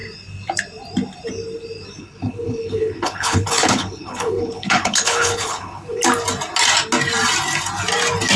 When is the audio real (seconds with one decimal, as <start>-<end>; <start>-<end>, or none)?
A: 0.0-2.0; 6.0-8.4